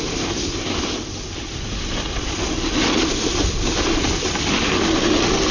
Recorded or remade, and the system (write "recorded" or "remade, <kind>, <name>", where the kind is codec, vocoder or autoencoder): recorded